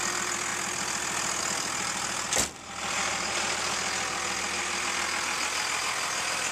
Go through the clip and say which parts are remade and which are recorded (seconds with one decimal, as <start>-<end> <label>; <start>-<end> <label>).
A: 0.0-6.5 recorded